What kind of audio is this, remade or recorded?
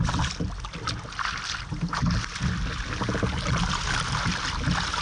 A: recorded